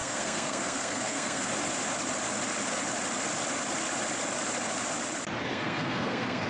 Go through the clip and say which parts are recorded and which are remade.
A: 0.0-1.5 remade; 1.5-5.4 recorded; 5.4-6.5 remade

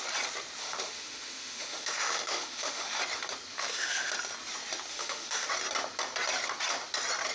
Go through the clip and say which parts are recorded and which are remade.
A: 0.0-0.6 recorded; 0.6-3.0 remade; 3.0-3.5 recorded; 3.5-4.1 remade; 4.1-4.9 recorded; 4.9-5.5 remade; 5.5-7.3 recorded

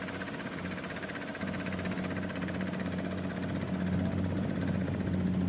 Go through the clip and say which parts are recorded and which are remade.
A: 0.0-5.5 recorded

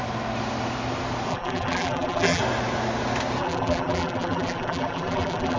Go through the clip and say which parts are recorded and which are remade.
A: 0.0-1.3 recorded; 1.3-2.4 remade; 2.4-3.4 recorded; 3.4-5.6 remade

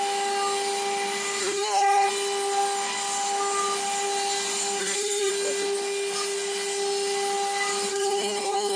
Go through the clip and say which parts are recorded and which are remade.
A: 0.0-1.4 recorded; 1.4-2.1 remade; 2.1-4.8 recorded; 4.8-5.3 remade; 5.3-7.9 recorded; 7.9-8.8 remade

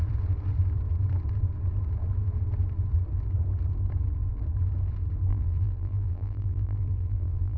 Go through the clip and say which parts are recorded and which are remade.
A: 0.0-5.3 recorded; 5.3-7.6 remade

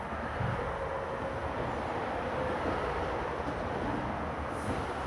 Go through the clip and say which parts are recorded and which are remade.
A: 0.0-5.1 recorded

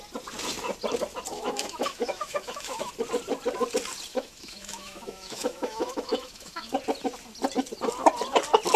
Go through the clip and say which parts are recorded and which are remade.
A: 0.0-1.3 recorded; 1.3-2.9 remade; 2.9-4.1 recorded; 4.1-6.7 remade; 6.7-8.8 recorded